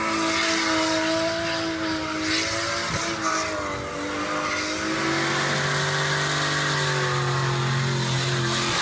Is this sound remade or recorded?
recorded